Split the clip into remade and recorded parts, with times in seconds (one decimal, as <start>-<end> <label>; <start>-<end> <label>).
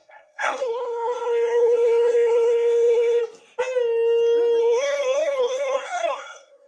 0.0-3.2 remade; 3.2-4.6 recorded; 4.6-6.7 remade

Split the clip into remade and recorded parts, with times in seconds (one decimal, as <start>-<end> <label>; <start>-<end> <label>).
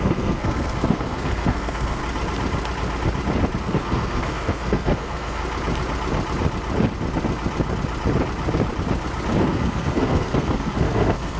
0.0-2.0 remade; 2.0-3.6 recorded; 3.6-5.4 remade; 5.4-9.4 recorded; 9.4-11.4 remade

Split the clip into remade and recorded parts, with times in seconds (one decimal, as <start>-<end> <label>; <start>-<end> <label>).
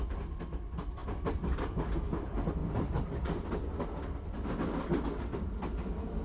0.0-6.2 recorded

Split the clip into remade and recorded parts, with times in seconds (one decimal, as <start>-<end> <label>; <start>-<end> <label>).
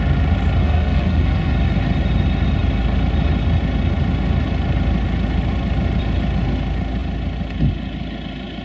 0.0-0.6 recorded; 0.6-1.5 remade; 1.5-8.6 recorded